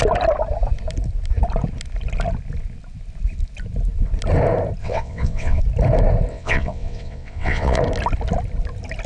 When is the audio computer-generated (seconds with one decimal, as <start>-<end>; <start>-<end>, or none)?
4.8-5.6; 6.3-7.8